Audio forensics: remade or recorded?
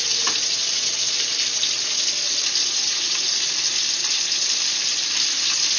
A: recorded